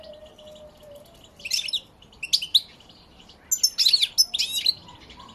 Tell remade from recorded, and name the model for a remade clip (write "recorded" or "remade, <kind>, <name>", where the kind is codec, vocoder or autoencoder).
recorded